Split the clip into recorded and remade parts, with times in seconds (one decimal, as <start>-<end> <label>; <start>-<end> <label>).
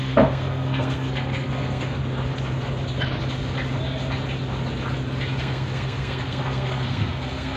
0.0-2.0 remade; 2.0-5.4 recorded; 5.4-7.6 remade